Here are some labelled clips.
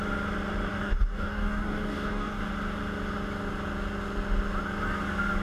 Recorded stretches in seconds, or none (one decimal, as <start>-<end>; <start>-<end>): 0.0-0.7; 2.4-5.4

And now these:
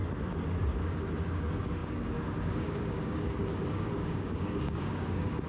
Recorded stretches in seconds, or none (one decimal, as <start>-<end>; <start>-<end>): 0.0-1.2

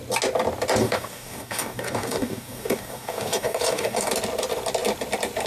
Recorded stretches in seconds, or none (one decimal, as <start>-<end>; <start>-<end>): 0.0-0.8; 4.1-5.5

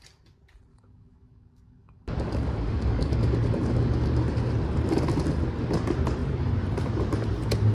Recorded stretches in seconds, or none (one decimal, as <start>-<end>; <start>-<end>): 0.0-0.7; 4.5-7.7

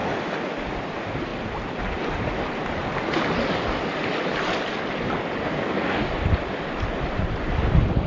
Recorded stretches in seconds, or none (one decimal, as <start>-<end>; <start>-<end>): 0.0-5.4; 6.1-8.1

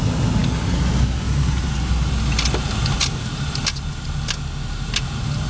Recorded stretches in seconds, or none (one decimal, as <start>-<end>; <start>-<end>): 0.0-5.5